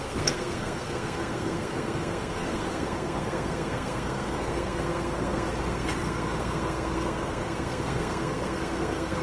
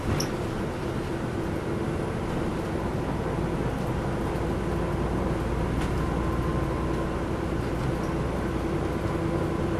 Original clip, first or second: second